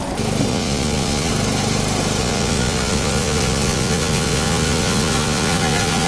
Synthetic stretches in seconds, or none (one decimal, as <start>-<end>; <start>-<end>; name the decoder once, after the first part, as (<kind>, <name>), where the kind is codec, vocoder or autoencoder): 0.5-1.3 (vocoder, Vocos); 2.2-6.1